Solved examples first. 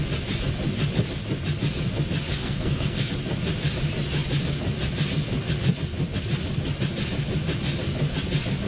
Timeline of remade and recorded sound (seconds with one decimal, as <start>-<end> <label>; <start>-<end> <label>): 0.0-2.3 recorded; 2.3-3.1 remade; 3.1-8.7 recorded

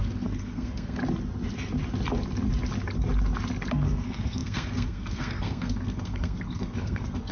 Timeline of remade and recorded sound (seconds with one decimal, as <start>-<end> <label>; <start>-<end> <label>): 0.0-1.0 remade; 1.0-3.7 recorded; 3.7-7.3 remade

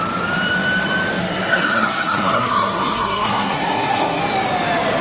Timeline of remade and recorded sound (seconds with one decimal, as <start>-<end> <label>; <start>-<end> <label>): 0.0-1.2 recorded; 1.2-4.2 remade; 4.2-5.0 recorded

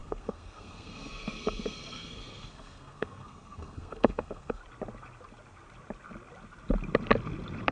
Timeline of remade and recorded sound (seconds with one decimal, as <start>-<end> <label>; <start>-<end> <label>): 0.0-4.6 remade; 4.6-7.7 recorded